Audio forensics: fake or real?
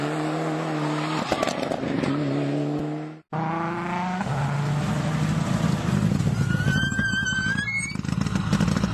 real